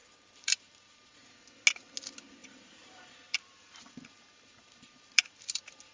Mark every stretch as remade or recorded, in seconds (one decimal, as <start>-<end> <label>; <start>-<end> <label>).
0.0-1.3 remade; 1.3-2.4 recorded; 2.4-5.9 remade